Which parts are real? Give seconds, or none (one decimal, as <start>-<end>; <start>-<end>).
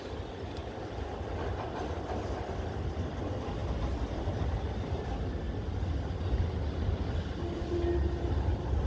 0.0-8.9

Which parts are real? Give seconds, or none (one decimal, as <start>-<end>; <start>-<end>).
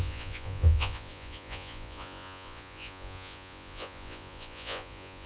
none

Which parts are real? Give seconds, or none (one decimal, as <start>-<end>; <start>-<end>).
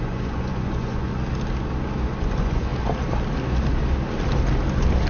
1.1-2.2; 2.7-5.1